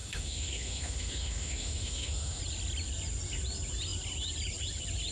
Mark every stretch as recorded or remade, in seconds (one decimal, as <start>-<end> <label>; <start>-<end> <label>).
0.0-2.4 remade; 2.4-5.1 recorded